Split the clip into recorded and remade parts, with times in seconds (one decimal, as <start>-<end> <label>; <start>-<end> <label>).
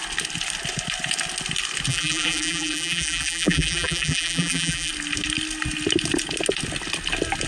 0.0-1.9 recorded; 1.9-4.9 remade; 4.9-7.5 recorded